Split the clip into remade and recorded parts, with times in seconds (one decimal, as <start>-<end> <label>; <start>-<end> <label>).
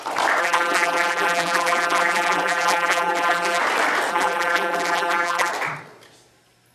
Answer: 0.0-0.4 recorded; 0.4-3.6 remade; 3.6-4.1 recorded; 4.1-5.5 remade; 5.5-6.7 recorded